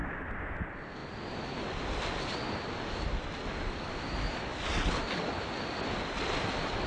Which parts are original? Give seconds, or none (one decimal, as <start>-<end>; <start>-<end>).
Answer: 0.0-6.9